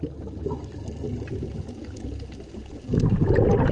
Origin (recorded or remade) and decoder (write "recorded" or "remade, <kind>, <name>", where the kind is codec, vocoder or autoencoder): recorded